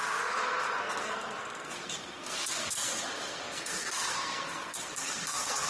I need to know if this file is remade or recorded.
remade